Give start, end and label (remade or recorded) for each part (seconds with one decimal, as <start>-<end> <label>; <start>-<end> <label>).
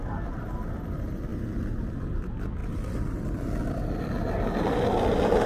0.0-5.5 recorded